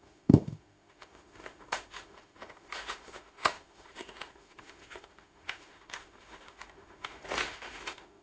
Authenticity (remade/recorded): remade